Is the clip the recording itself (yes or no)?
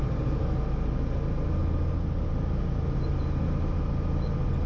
yes